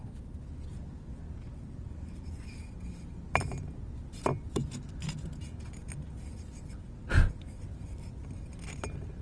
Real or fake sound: real